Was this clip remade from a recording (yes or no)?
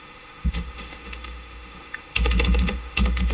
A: yes